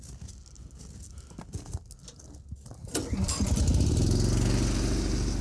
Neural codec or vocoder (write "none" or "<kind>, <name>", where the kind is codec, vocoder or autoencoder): none